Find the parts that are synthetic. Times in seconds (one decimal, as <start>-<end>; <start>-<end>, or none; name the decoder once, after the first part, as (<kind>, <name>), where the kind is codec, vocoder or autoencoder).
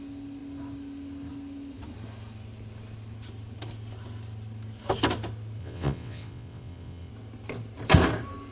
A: 5.6-7.1 (vocoder, WaveNeXt)